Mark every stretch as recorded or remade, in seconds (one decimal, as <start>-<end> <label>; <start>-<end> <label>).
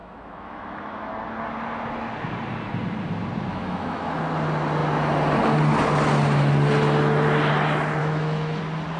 0.0-1.1 remade; 1.1-3.5 recorded; 3.5-4.2 remade; 4.2-8.0 recorded; 8.0-8.6 remade; 8.6-9.0 recorded